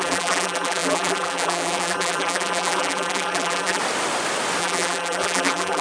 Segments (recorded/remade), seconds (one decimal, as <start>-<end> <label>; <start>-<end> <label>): 0.0-3.8 remade; 3.8-4.6 recorded; 4.6-5.8 remade